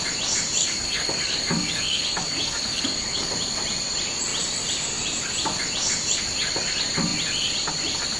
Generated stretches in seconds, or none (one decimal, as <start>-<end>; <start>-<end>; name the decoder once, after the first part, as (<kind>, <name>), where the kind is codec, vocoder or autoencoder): 0.6-3.3 (codec, DAC)